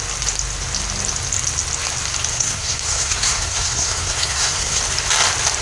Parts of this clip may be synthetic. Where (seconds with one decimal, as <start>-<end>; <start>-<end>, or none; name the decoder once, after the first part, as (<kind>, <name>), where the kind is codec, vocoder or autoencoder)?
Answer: 2.3-4.8 (codec, SNAC)